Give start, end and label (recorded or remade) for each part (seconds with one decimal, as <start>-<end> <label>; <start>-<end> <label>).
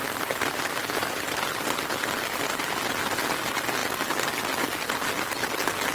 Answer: 0.0-1.5 remade; 1.5-5.9 recorded